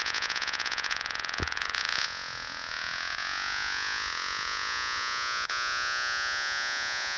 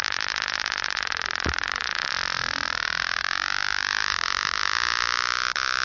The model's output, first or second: first